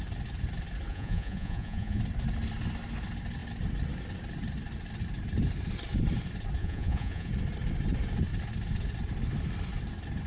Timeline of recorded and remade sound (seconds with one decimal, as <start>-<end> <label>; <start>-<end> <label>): 0.0-0.9 recorded; 0.9-2.0 remade; 2.0-6.6 recorded; 6.6-7.3 remade; 7.3-10.3 recorded